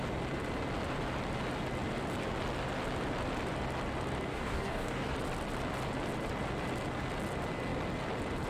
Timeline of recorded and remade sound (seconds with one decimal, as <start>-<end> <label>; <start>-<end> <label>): 0.0-4.3 recorded; 4.3-5.1 remade; 5.1-8.5 recorded